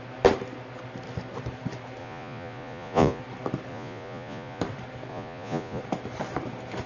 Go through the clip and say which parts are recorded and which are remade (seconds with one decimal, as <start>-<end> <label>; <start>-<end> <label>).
0.0-2.0 recorded; 2.0-3.2 remade; 3.2-3.7 recorded; 3.7-4.6 remade; 4.6-5.1 recorded; 5.1-5.8 remade; 5.8-6.9 recorded